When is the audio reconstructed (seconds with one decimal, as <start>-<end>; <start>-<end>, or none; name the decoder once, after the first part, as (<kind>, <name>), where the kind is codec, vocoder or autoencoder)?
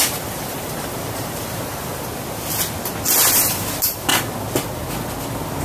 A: 0.0-1.9 (vocoder, BigVGAN v2); 3.3-4.1